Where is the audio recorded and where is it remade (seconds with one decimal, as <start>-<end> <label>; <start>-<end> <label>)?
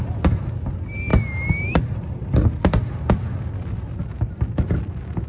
0.0-5.3 recorded